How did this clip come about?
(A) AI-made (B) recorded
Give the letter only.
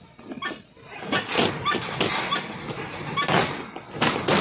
B